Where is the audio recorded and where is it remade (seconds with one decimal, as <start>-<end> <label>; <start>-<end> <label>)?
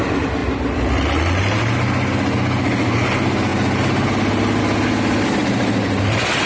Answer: 0.0-6.5 recorded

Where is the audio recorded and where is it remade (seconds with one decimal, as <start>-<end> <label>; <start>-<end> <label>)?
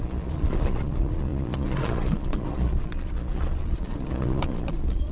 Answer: 0.0-5.1 remade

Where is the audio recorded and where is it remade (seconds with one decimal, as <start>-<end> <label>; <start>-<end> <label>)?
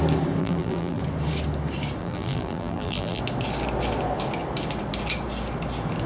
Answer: 0.0-0.4 recorded; 0.4-1.0 remade; 1.0-2.0 recorded; 2.0-3.2 remade; 3.2-6.1 recorded